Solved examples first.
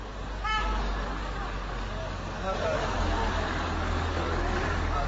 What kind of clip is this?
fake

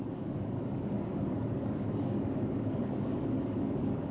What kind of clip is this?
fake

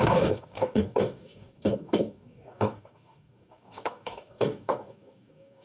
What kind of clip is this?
fake